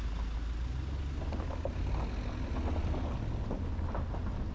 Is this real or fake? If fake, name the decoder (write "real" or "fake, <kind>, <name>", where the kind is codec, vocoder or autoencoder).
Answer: real